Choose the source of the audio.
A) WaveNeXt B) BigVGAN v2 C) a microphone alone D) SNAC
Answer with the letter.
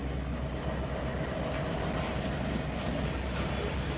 C